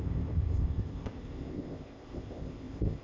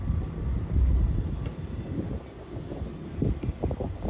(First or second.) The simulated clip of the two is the first